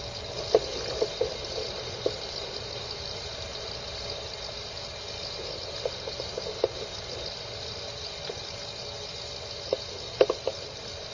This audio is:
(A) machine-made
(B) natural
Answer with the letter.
B